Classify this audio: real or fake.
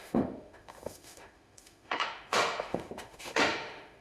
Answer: fake